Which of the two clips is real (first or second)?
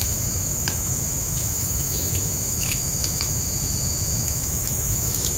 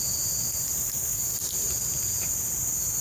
second